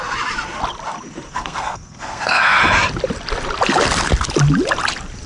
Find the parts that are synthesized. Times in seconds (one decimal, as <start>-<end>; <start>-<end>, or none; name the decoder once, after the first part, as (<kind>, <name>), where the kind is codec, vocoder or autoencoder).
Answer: 1.3-2.6 (codec, SNAC)